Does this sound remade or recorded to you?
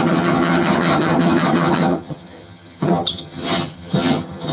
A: remade